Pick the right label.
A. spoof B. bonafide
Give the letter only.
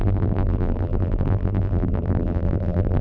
A